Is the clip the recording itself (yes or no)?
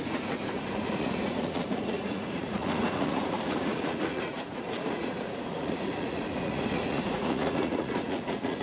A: no